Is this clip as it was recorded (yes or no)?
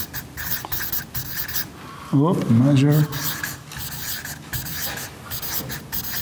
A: yes